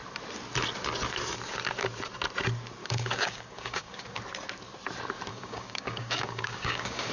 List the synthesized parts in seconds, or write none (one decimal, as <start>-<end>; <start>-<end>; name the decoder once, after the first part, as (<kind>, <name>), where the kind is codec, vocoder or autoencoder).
2.8-4.2 (codec, DAC); 5.3-7.1